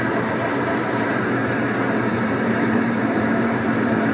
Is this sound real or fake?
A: fake